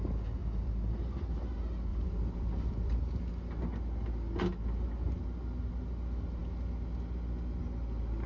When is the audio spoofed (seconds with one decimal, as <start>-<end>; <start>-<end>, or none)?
0.4-0.9; 1.9-3.3